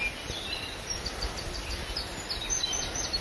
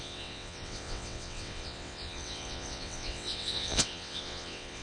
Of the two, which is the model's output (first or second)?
second